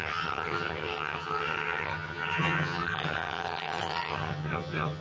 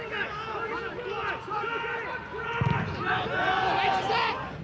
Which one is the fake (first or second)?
first